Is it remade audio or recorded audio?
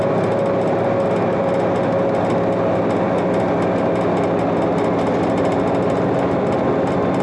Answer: recorded